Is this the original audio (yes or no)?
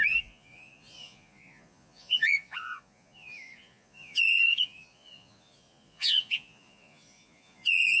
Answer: no